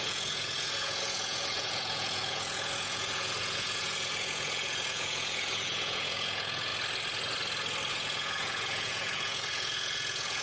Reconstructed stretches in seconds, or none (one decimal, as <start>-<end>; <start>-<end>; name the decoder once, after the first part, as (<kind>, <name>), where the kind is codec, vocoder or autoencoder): 0.0-6.7 (vocoder, Vocos); 7.9-10.4